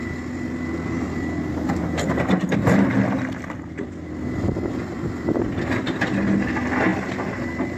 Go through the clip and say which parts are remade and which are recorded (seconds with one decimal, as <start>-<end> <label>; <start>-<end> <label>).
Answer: 0.0-7.8 recorded